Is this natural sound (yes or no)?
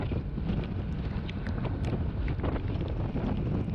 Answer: yes